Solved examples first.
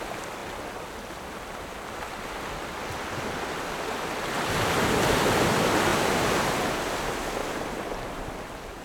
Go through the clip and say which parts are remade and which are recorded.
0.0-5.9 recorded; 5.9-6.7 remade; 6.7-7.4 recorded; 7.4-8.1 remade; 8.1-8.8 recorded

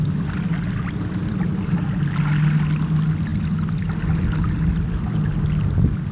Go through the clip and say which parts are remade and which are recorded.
0.0-6.1 recorded

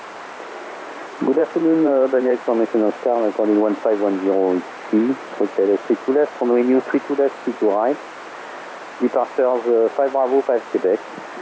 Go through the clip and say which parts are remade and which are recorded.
0.0-1.4 recorded; 1.4-2.4 remade; 2.4-11.4 recorded

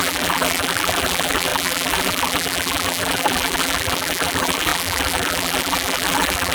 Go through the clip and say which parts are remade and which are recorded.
0.0-6.5 remade